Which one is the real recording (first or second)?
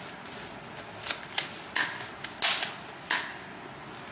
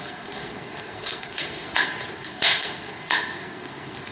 first